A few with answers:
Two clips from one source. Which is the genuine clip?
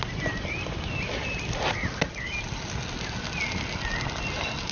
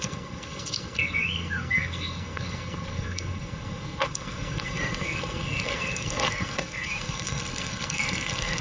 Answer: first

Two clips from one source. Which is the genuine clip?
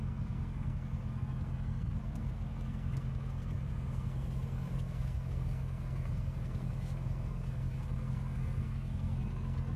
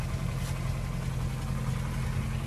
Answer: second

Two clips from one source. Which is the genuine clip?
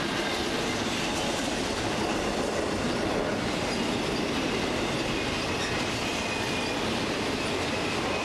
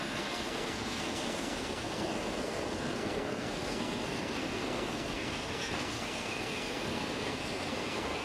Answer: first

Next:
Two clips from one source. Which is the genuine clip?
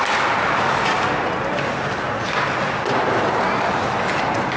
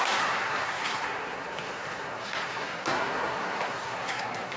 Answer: first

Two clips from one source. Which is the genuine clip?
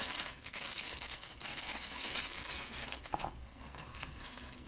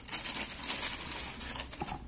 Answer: second